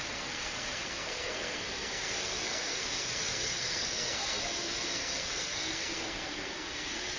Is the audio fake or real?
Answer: fake